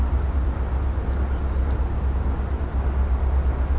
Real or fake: real